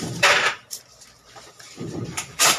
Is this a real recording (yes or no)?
no